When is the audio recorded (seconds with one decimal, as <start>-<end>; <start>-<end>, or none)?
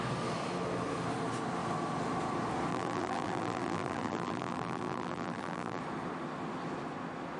0.0-2.7; 5.8-7.4